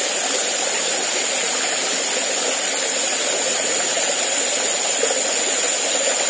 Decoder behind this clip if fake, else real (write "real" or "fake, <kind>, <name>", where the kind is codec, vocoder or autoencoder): real